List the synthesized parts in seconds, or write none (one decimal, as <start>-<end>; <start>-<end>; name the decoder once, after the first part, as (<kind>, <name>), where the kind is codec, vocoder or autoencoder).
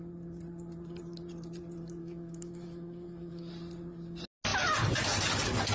2.0-3.5 (autoencoder, DAC-VAE)